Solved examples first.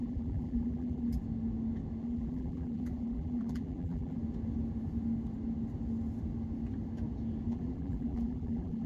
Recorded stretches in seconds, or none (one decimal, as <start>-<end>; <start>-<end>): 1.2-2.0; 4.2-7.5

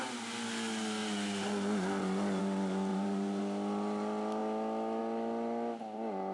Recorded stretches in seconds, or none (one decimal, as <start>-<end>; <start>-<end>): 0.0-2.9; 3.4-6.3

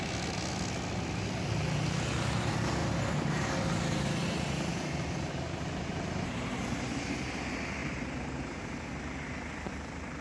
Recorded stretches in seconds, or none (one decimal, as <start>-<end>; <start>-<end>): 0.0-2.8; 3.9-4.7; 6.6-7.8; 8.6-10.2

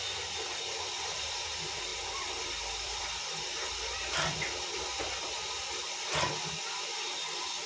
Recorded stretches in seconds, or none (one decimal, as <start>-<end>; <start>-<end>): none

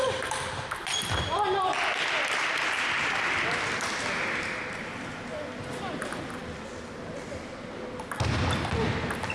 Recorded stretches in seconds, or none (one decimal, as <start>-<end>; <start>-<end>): 4.6-9.3